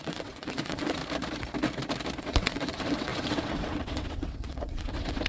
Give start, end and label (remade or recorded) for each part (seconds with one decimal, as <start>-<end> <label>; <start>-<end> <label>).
0.0-1.0 remade; 1.0-2.2 recorded; 2.2-5.3 remade